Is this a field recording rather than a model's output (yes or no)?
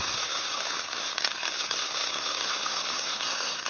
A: no